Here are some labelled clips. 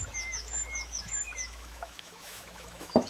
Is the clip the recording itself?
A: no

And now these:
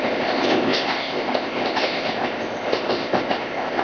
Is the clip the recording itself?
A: no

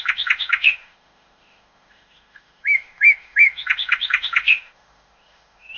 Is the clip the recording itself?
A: no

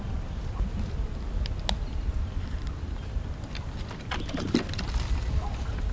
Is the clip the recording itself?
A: yes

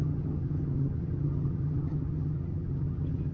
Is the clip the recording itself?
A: no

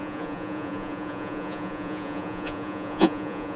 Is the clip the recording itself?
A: no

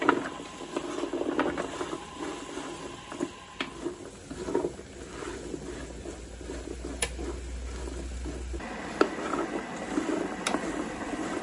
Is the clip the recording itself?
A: yes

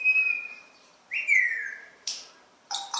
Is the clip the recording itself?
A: no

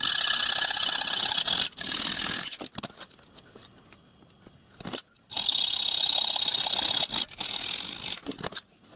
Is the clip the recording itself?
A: yes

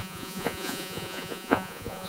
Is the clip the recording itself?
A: no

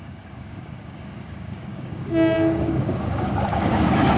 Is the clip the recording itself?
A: no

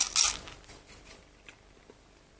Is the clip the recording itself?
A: yes